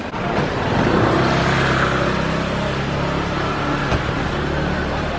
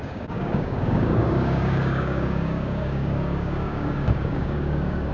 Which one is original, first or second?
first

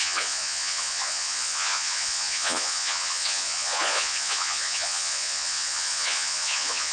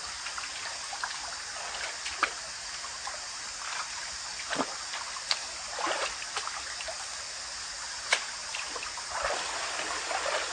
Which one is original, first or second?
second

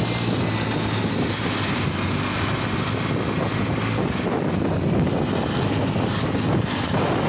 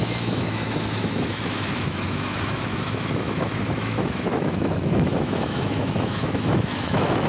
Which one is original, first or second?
first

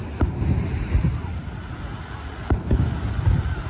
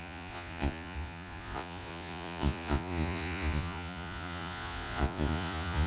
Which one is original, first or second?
first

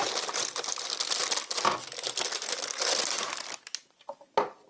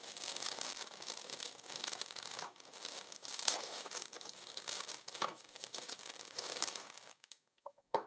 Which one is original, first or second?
first